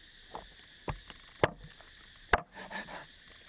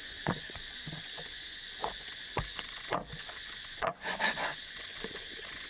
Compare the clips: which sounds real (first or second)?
first